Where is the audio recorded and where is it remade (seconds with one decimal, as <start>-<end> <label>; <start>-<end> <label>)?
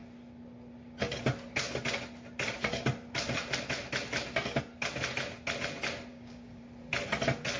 0.0-6.1 recorded; 6.1-6.6 remade; 6.6-7.6 recorded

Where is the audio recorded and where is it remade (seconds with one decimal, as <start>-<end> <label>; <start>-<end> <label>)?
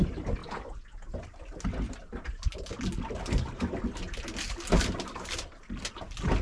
0.0-6.4 recorded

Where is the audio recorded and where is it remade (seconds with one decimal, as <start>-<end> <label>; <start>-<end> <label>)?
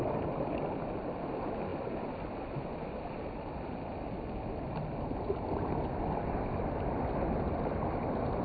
0.0-8.4 recorded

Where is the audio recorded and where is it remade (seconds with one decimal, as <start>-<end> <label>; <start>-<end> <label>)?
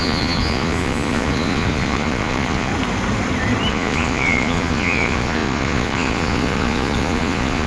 0.0-2.7 remade; 2.7-3.7 recorded; 3.7-7.7 remade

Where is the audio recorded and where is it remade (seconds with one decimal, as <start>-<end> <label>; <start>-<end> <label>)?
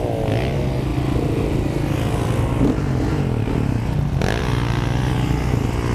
0.0-5.9 recorded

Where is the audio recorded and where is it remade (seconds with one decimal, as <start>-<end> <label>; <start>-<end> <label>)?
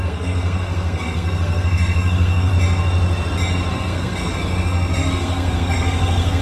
0.0-2.5 remade; 2.5-3.7 recorded; 3.7-6.4 remade